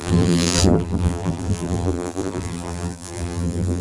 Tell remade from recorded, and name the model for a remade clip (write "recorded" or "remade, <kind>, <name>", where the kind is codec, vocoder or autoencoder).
remade, vocoder, BigVGAN v2